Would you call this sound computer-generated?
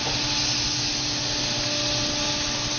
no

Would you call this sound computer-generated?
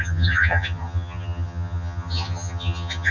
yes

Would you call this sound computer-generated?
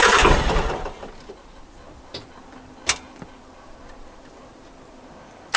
no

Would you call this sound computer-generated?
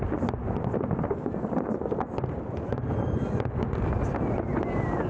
no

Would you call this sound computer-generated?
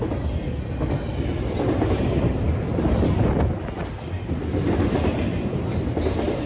no